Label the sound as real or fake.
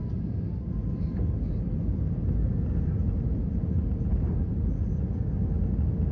real